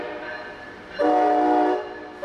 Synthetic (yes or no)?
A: no